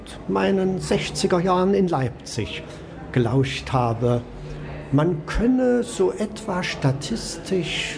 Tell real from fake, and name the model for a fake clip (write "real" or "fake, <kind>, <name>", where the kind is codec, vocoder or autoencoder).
real